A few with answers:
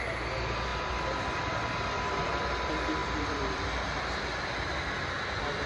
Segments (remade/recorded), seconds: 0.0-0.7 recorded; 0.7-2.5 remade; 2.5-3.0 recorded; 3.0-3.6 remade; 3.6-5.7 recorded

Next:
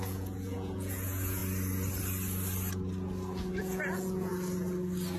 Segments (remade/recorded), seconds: 0.0-1.4 remade; 1.4-3.6 recorded; 3.6-4.3 remade; 4.3-5.2 recorded

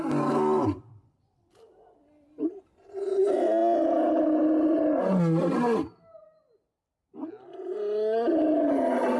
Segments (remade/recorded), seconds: 0.0-9.2 recorded

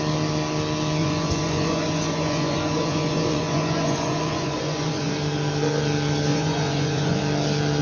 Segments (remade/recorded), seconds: 0.0-1.0 recorded; 1.0-5.1 remade; 5.1-6.3 recorded; 6.3-7.2 remade; 7.2-7.8 recorded

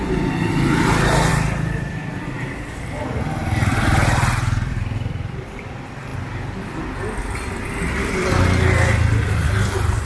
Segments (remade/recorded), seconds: 0.0-1.3 recorded; 1.3-2.8 remade; 2.8-3.7 recorded; 3.7-5.4 remade; 5.4-10.0 recorded

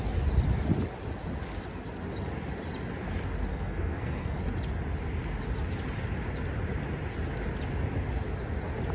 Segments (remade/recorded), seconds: 0.0-3.5 recorded; 3.5-4.4 remade; 4.4-8.9 recorded

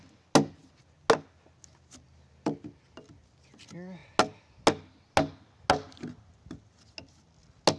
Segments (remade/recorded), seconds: 0.0-7.8 recorded

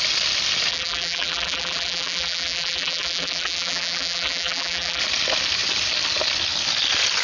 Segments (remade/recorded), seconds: 0.0-0.7 recorded; 0.7-5.0 remade; 5.0-7.2 recorded